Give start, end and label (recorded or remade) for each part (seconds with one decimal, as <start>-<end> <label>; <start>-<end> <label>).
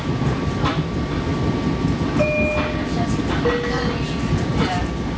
0.0-1.3 remade; 1.3-4.4 recorded; 4.4-5.2 remade